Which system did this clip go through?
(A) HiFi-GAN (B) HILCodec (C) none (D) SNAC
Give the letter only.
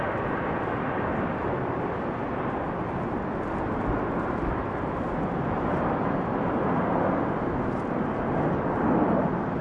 C